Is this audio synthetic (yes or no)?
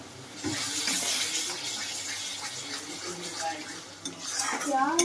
no